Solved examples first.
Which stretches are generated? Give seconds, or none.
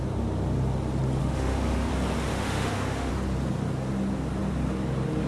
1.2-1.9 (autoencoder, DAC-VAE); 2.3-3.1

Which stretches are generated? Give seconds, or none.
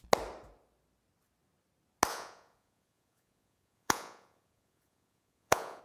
2.1-5.8 (vocoder, Vocos)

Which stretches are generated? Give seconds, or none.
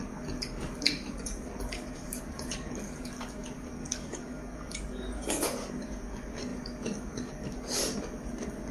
0.0-8.7 (codec, DAC)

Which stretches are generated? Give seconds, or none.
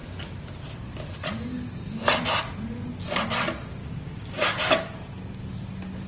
3.8-4.8 (codec, DAC)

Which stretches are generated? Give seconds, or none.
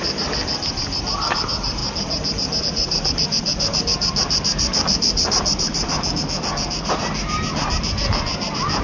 0.0-1.8 (vocoder, BigVGAN v2); 2.6-7.0; 7.8-8.8